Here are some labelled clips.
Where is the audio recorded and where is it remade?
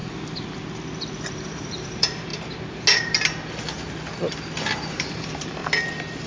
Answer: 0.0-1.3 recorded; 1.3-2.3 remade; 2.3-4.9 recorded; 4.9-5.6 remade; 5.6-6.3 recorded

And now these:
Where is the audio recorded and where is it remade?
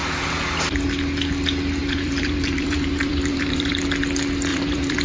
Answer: 0.0-1.8 recorded; 1.8-3.7 remade; 3.7-4.5 recorded; 4.5-5.0 remade